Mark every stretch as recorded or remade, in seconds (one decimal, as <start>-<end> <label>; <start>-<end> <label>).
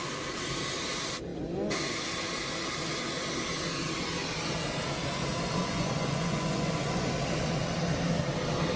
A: 0.0-5.6 recorded; 5.6-7.1 remade; 7.1-8.8 recorded